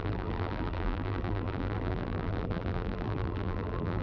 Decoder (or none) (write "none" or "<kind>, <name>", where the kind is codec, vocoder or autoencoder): vocoder, BigVGAN v2